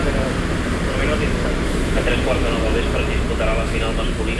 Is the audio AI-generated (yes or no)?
no